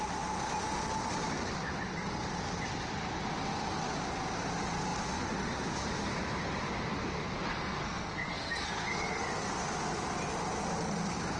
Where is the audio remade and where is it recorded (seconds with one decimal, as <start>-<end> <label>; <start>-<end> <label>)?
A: 0.0-7.5 recorded; 7.5-9.5 remade; 9.5-11.4 recorded